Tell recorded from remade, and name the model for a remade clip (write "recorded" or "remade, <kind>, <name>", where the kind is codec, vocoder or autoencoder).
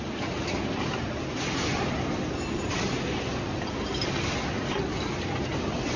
recorded